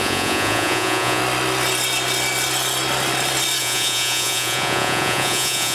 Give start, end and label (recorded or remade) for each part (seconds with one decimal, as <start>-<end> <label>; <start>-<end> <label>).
0.0-1.2 remade; 1.2-3.6 recorded; 3.6-5.7 remade